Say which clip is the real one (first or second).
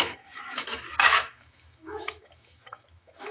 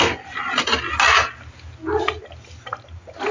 second